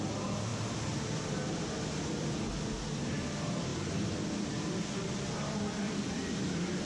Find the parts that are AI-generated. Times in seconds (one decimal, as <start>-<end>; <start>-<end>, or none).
0.5-2.3